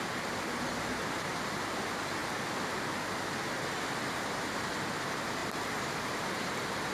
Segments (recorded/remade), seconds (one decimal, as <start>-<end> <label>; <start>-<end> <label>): 0.0-0.7 recorded; 0.7-1.3 remade; 1.3-5.4 recorded; 5.4-6.2 remade; 6.2-6.9 recorded